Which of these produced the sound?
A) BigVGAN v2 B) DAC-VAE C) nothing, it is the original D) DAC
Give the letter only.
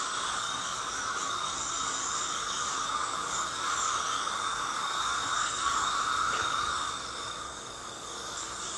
D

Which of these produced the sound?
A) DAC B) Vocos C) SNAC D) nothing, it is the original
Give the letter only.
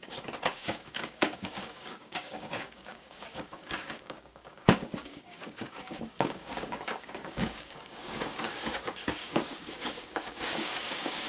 A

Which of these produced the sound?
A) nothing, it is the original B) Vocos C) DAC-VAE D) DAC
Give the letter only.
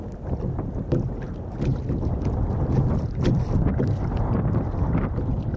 A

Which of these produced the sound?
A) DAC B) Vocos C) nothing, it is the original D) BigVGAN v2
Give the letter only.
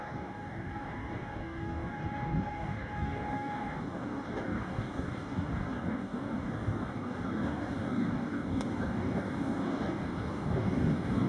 A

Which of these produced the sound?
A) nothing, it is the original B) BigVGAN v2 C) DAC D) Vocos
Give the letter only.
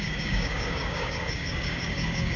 C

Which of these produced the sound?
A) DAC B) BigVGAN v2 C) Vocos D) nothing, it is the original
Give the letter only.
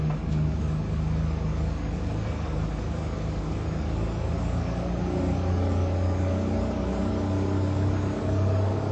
A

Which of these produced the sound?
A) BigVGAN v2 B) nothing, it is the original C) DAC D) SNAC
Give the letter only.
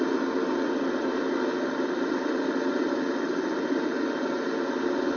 B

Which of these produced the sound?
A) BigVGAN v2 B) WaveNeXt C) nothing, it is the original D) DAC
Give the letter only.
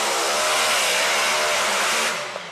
C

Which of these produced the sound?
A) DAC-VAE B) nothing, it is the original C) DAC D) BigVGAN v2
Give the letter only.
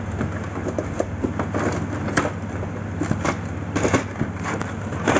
B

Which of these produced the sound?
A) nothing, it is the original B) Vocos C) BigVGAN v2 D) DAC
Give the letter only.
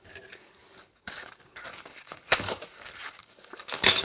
D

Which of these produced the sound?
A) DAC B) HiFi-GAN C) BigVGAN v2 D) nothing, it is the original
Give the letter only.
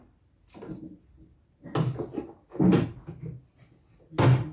D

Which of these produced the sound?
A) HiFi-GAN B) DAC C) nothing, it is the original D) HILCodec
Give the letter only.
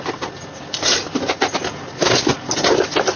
C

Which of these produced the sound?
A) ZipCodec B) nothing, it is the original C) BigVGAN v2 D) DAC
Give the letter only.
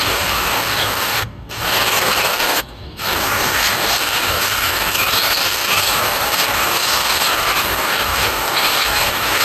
D